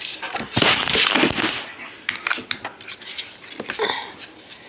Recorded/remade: recorded